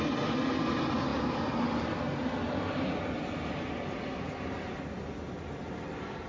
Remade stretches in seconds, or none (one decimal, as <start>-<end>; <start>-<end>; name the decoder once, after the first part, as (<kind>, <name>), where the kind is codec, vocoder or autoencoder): none